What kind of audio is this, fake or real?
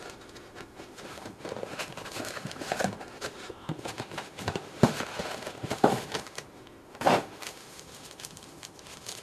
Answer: fake